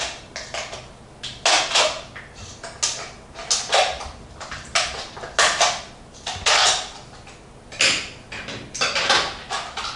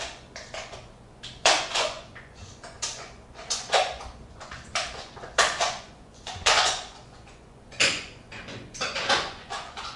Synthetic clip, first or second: second